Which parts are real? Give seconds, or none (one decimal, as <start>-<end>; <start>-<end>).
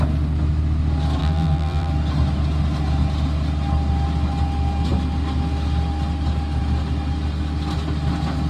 0.0-1.2; 1.9-8.5